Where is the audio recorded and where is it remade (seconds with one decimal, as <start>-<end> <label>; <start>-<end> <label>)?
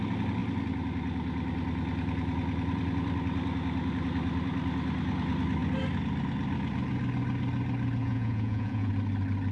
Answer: 0.0-8.0 recorded; 8.0-8.9 remade; 8.9-9.5 recorded